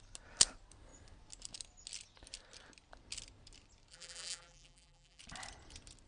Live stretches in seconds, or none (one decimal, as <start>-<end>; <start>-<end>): 0.0-3.9; 5.2-6.1